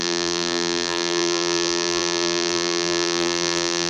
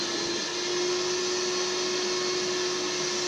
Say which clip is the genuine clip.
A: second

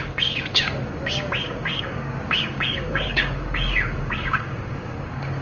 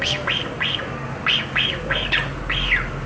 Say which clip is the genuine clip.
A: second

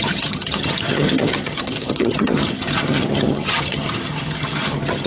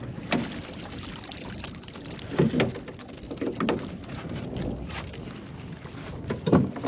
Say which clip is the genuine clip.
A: second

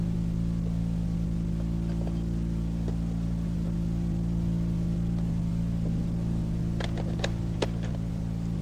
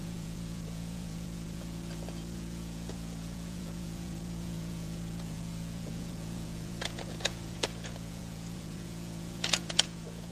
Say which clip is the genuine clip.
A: first